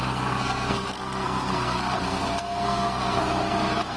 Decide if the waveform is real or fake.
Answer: fake